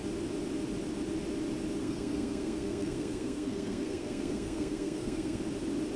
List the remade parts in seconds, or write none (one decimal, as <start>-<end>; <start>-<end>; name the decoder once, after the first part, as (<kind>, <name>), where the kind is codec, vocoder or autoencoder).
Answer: 1.8-5.4 (codec, SNAC)